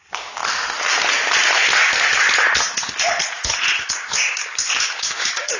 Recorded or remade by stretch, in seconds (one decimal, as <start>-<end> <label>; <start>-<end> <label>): 0.0-0.4 remade; 0.4-3.8 recorded; 3.8-5.6 remade